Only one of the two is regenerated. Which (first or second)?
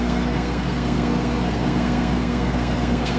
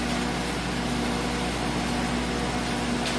first